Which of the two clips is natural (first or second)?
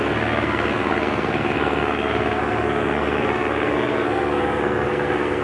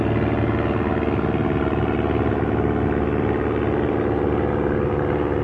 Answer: second